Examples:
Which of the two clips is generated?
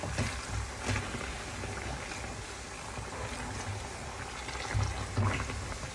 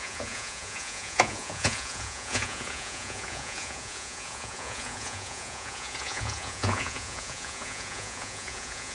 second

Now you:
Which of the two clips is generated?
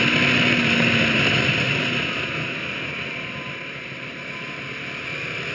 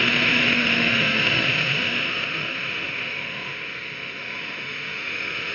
second